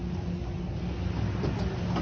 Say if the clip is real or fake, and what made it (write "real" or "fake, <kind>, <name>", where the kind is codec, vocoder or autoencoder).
real